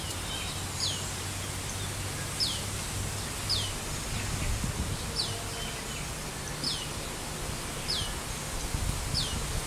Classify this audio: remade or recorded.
recorded